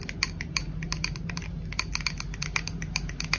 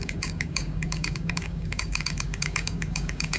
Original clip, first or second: first